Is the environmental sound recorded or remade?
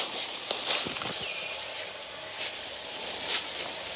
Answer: recorded